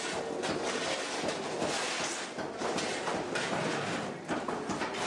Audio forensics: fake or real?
real